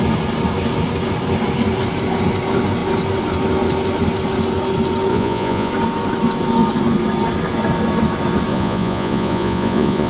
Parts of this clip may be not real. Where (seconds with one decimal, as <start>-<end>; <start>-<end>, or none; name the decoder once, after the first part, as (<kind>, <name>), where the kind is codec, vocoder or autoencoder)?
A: 5.1-5.7 (vocoder, Vocos); 8.5-10.1